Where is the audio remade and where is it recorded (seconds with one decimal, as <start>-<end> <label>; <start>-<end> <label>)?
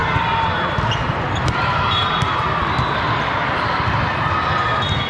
0.0-5.1 recorded